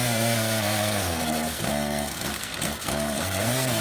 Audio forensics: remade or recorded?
remade